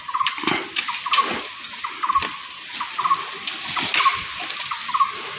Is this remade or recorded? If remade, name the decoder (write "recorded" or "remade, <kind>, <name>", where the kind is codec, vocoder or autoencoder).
recorded